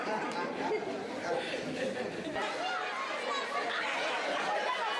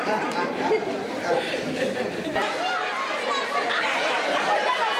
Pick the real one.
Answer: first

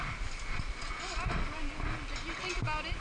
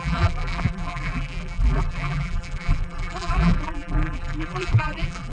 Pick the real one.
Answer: first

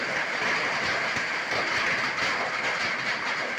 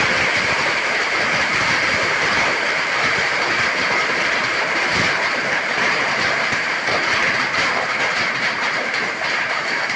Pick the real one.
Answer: first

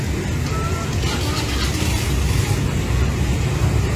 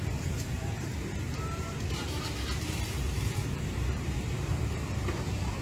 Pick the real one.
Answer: first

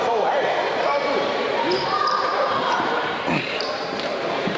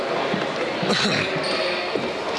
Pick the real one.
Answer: second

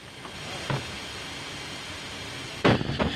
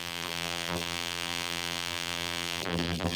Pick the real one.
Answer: first